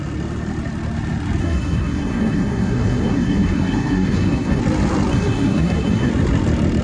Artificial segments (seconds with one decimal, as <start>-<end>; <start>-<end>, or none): 1.4-4.6; 5.1-6.1